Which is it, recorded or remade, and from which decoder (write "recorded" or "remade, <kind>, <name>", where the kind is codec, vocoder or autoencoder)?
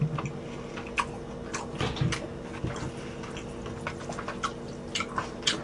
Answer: recorded